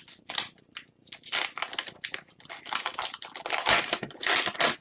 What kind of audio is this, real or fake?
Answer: real